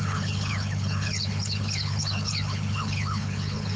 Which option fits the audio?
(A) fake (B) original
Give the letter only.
A